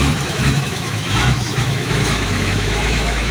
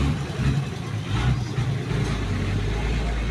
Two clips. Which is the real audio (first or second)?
second